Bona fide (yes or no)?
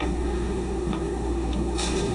no